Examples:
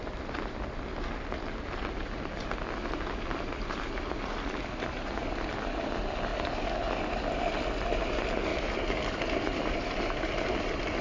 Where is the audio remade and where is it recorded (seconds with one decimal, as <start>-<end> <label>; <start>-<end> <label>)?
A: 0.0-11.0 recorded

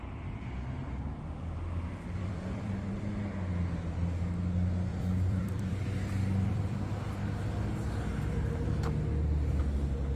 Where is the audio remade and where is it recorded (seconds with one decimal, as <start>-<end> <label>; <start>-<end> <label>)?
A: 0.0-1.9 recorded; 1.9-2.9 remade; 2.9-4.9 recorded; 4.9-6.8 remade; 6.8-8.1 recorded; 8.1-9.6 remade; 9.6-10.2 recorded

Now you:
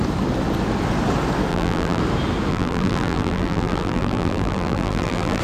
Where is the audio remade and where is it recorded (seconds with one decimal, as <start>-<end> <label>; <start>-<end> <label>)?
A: 0.0-1.5 recorded; 1.5-2.0 remade; 2.0-2.5 recorded; 2.5-5.4 remade

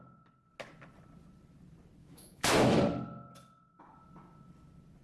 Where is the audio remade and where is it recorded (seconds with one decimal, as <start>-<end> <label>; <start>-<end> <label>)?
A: 0.0-2.0 recorded; 2.0-2.8 remade; 2.8-5.0 recorded

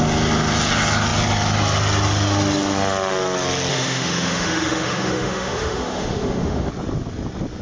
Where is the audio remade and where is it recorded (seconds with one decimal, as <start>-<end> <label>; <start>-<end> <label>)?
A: 0.0-3.7 recorded; 3.7-6.7 remade; 6.7-7.6 recorded

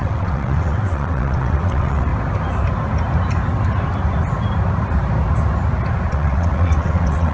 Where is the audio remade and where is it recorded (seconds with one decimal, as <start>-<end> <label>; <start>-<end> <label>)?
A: 0.0-2.1 remade; 2.1-6.1 recorded; 6.1-7.3 remade